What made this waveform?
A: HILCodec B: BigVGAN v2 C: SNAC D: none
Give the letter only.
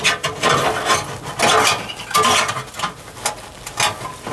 D